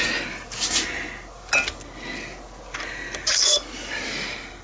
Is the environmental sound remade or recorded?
recorded